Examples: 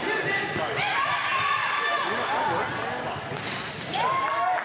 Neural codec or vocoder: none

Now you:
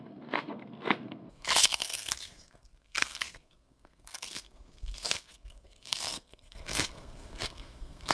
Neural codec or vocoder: codec, SNAC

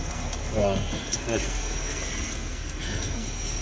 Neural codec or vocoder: codec, SNAC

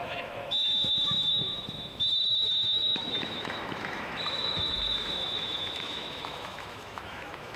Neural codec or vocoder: autoencoder, DAC-VAE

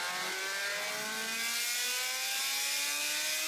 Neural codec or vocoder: none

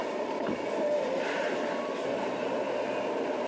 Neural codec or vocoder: none